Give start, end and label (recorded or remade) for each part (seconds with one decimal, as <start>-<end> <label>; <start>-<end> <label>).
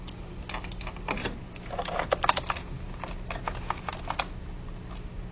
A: 0.0-1.2 recorded; 1.2-2.1 remade; 2.1-5.3 recorded